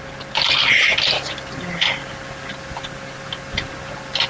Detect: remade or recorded recorded